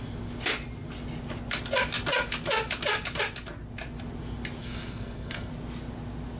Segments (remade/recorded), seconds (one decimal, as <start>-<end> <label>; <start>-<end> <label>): 0.0-4.6 recorded; 4.6-5.5 remade; 5.5-6.4 recorded